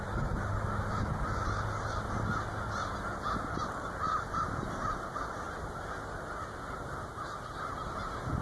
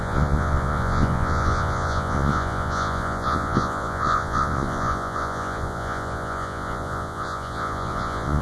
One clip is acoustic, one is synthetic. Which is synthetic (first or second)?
second